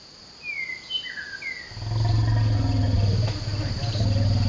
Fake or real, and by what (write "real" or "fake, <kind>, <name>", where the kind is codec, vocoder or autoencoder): real